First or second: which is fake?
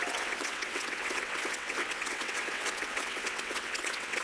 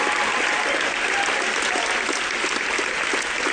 first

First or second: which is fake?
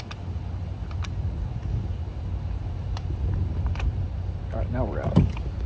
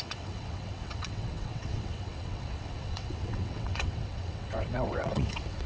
second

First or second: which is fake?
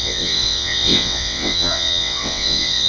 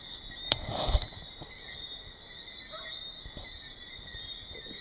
first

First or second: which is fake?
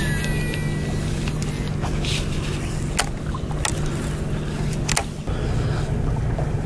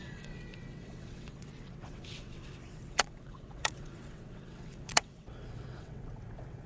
second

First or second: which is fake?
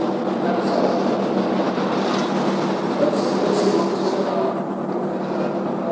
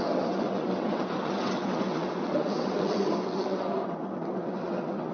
second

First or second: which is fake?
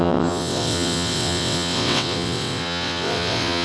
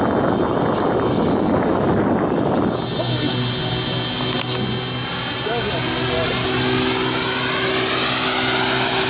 first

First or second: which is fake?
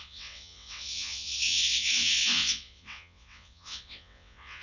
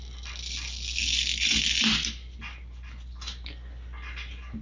first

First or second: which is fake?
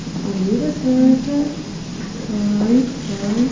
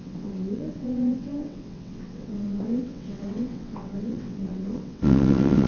second